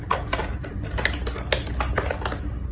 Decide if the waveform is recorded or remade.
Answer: recorded